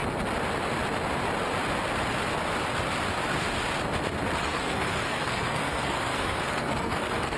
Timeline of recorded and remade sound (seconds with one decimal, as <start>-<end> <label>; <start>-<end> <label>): 0.0-4.4 recorded; 4.4-7.4 remade